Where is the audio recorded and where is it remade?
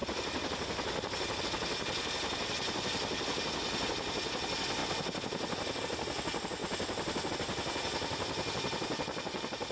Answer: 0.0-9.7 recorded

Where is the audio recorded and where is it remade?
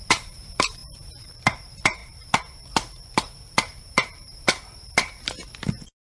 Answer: 0.0-6.1 remade